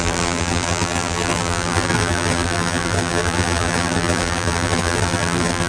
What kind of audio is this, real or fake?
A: fake